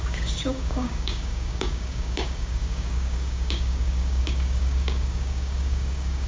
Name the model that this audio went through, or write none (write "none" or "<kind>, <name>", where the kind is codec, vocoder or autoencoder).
codec, DAC